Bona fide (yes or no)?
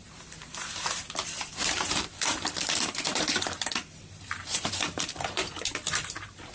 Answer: no